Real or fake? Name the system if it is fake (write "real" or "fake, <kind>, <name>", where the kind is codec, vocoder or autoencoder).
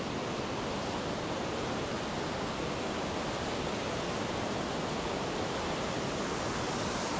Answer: real